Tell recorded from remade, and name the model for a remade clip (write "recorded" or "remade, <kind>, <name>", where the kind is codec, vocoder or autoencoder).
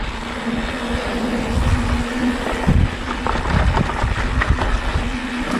recorded